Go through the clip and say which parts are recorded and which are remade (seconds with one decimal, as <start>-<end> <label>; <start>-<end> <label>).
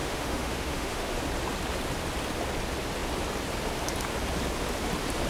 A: 0.0-1.2 remade; 1.2-5.3 recorded